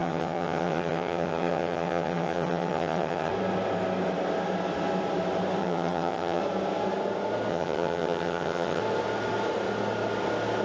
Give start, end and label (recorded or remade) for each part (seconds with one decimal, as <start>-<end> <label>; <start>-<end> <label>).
0.0-3.3 remade; 3.3-5.6 recorded; 5.6-6.4 remade; 6.4-7.5 recorded; 7.5-8.8 remade; 8.8-10.6 recorded